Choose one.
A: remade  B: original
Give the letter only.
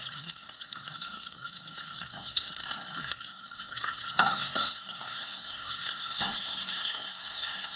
A